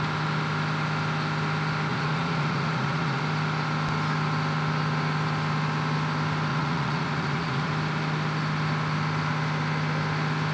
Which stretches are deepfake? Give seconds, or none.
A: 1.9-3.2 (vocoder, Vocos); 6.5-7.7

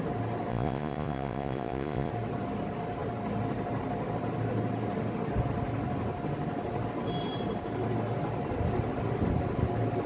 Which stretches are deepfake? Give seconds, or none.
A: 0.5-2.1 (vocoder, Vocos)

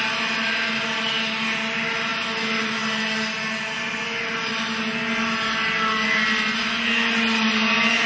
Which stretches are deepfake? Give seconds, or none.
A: none

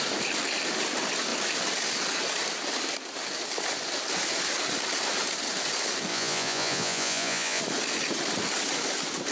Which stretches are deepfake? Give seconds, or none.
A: 6.1-7.6 (vocoder, Vocos)

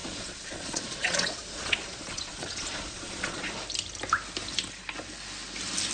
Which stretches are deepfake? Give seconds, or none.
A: 0.0-3.5 (vocoder, Vocos)